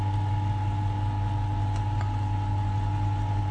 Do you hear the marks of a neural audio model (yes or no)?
no